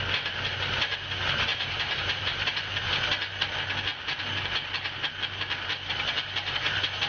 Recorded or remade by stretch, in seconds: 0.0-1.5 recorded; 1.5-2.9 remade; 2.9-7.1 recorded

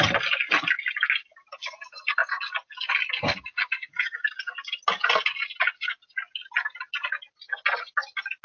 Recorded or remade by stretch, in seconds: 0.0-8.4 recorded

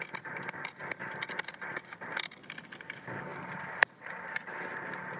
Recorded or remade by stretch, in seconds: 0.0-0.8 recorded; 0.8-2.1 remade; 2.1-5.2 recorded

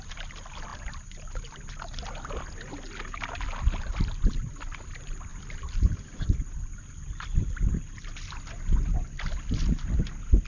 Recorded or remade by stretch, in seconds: 0.0-10.5 recorded